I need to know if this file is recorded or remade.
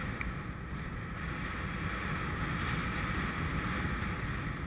recorded